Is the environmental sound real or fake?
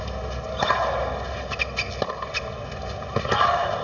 real